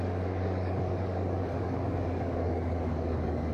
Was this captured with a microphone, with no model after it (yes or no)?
no